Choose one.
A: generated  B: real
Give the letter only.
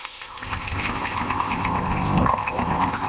A